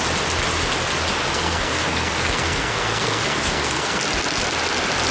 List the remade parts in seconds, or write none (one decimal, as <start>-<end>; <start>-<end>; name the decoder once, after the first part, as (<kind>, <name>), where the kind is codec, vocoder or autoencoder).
1.2-4.0 (codec, SNAC)